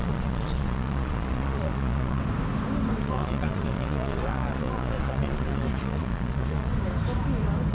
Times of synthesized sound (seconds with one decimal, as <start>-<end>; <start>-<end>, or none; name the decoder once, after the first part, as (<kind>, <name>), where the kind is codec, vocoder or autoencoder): 0.0-2.2 (vocoder, Vocos); 3.0-6.7